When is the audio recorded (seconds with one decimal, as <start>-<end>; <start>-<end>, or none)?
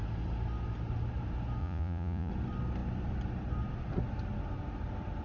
0.0-1.6; 2.3-5.2